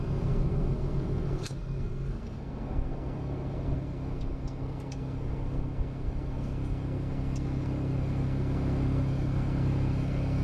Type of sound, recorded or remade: remade